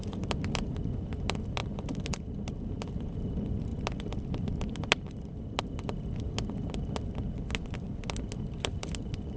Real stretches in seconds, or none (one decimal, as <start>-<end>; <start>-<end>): 0.0-9.4

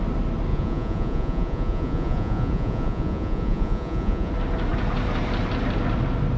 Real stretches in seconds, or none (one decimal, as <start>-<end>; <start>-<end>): 0.0-0.5; 4.3-6.4